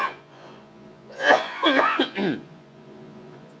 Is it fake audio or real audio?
fake